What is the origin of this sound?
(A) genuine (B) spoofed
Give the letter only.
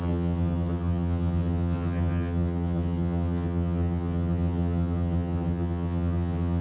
B